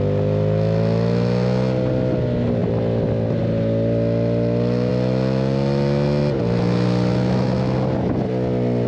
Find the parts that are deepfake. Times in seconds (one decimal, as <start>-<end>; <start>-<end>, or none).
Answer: none